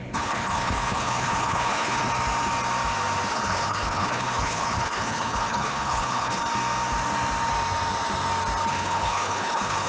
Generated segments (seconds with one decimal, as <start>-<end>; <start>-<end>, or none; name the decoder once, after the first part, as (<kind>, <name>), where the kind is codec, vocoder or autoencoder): 0.0-2.0 (codec, HILCodec); 3.3-6.4; 8.7-9.9